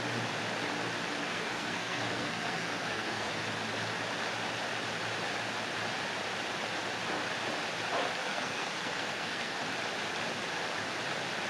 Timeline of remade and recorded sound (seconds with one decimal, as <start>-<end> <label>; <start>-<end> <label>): 0.0-1.2 recorded; 1.2-3.3 remade; 3.3-8.2 recorded; 8.2-9.6 remade; 9.6-11.5 recorded